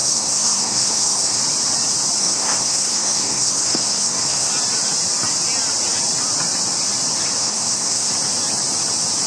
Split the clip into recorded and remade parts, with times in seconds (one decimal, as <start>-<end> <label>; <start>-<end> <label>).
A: 0.0-1.4 remade; 1.4-2.2 recorded; 2.2-4.5 remade; 4.5-7.4 recorded; 7.4-8.1 remade; 8.1-9.3 recorded